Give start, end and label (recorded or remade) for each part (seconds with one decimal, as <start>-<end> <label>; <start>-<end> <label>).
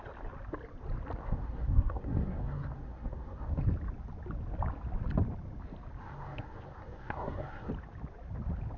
0.0-1.2 recorded; 1.2-3.6 remade; 3.6-6.0 recorded; 6.0-7.7 remade; 7.7-8.8 recorded